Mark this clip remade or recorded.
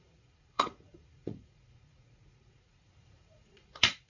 remade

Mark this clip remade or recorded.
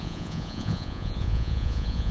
remade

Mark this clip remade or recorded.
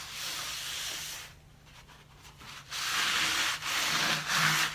recorded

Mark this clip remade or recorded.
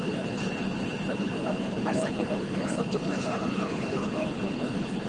remade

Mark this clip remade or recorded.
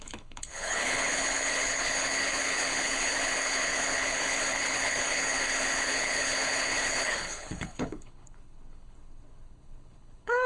remade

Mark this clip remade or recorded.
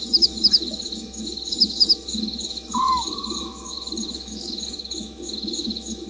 remade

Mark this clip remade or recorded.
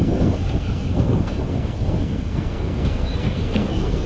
remade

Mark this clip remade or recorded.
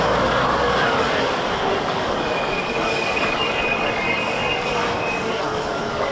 remade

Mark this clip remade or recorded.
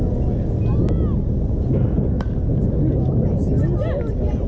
recorded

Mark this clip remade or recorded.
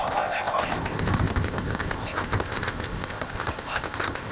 remade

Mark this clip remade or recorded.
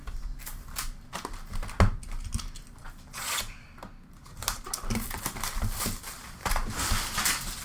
recorded